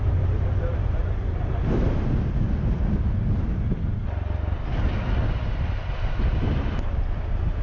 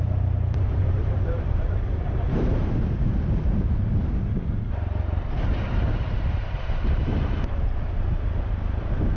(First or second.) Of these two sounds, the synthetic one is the second